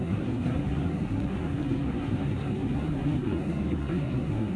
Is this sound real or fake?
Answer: fake